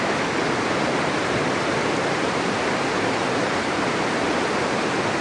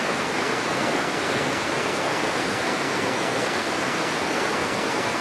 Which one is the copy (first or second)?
second